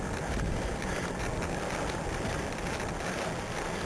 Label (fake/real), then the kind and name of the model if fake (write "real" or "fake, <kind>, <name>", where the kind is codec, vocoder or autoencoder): real